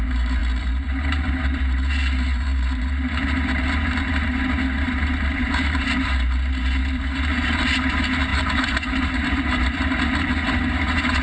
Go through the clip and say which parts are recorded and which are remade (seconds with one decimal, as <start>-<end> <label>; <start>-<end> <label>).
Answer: 0.0-11.2 remade